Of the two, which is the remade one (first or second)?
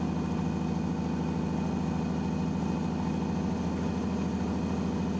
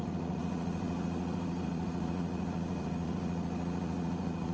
second